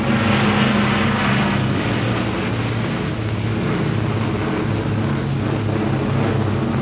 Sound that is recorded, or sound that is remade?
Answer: recorded